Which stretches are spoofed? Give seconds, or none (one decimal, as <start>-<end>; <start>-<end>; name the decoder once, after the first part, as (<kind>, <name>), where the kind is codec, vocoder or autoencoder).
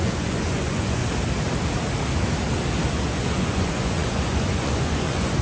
0.0-1.0 (vocoder, Vocos); 3.0-5.4